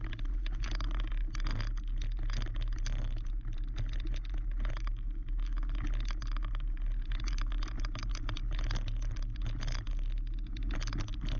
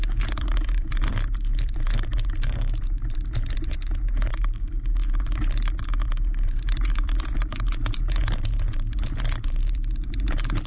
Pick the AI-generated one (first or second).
second